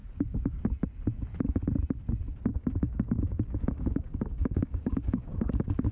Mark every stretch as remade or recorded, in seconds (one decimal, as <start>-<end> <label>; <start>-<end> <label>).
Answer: 0.0-0.6 remade; 0.6-2.5 recorded; 2.5-5.5 remade; 5.5-5.9 recorded